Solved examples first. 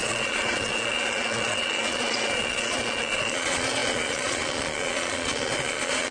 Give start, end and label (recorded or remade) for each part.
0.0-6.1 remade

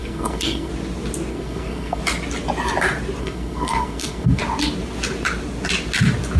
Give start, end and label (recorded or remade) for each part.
0.0-0.7 remade; 0.7-1.3 recorded; 1.3-2.0 remade; 2.0-3.2 recorded; 3.2-4.4 remade; 4.4-6.4 recorded

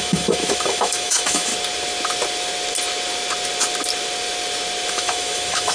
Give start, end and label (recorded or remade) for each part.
0.0-1.5 remade; 1.5-4.9 recorded; 4.9-5.7 remade

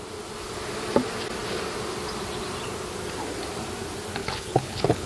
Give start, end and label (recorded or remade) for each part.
0.0-4.2 recorded; 4.2-5.1 remade

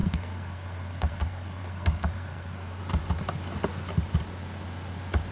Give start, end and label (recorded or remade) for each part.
0.0-2.8 remade; 2.8-5.3 recorded

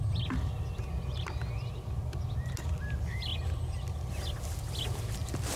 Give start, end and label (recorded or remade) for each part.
0.0-5.6 recorded